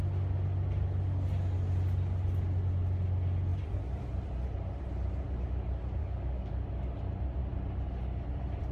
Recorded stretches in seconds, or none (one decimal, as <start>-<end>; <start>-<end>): 0.0-6.0; 6.5-8.7